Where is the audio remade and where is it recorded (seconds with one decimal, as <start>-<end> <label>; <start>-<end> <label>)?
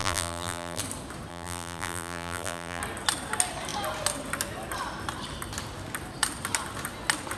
0.0-0.8 remade; 0.8-1.3 recorded; 1.3-2.8 remade; 2.8-7.4 recorded